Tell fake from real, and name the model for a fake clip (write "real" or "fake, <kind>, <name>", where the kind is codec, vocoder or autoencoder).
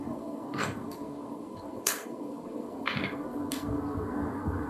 fake, codec, SNAC